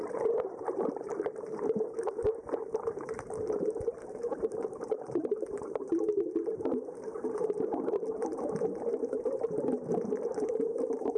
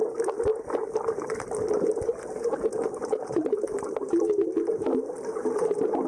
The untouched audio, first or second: second